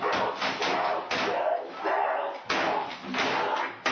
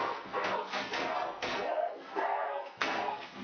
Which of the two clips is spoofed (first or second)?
second